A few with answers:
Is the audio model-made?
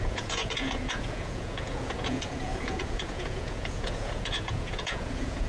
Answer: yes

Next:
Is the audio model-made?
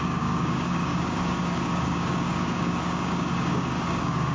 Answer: yes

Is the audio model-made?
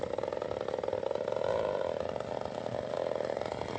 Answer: no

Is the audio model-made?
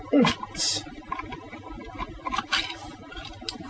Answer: no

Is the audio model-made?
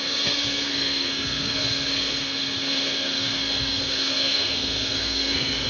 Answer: yes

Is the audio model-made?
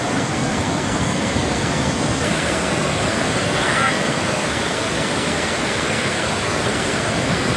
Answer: yes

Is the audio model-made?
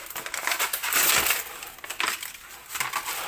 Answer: no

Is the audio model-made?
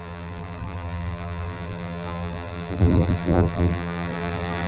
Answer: yes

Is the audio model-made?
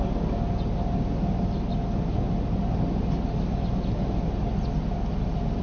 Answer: no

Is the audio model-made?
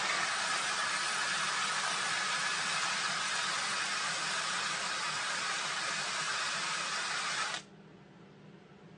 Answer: no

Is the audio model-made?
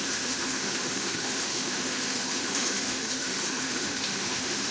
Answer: yes